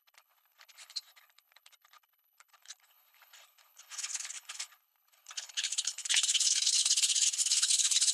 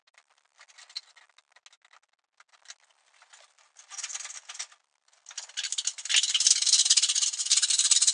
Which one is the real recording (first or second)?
second